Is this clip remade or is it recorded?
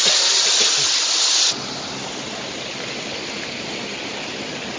recorded